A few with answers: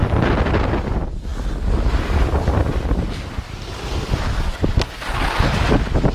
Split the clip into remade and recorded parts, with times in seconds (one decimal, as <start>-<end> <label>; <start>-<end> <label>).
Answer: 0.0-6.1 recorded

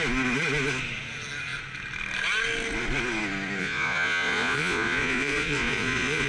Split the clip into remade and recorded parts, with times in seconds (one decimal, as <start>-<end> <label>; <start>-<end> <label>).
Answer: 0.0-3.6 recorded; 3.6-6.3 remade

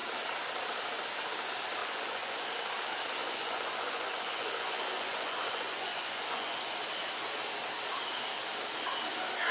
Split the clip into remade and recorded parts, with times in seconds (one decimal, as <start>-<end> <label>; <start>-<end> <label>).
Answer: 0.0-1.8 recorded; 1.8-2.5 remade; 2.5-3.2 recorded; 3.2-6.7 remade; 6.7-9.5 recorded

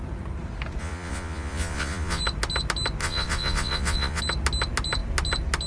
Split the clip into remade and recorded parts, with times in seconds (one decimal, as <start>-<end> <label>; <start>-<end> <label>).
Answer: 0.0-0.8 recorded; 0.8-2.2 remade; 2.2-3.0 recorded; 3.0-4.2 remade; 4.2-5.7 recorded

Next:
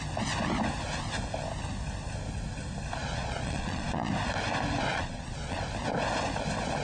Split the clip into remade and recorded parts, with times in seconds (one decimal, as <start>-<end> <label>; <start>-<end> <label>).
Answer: 0.0-3.0 recorded; 3.0-4.1 remade; 4.1-4.9 recorded; 4.9-5.6 remade; 5.6-6.8 recorded

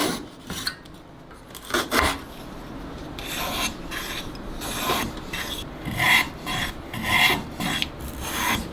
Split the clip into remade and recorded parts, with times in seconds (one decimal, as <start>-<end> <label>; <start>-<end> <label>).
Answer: 0.0-8.7 recorded